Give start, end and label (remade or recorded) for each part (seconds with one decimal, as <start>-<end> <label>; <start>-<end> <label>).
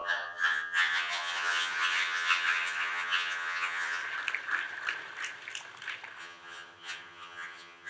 0.0-4.0 remade; 4.0-6.2 recorded; 6.2-7.9 remade